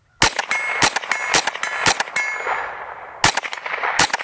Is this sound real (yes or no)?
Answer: yes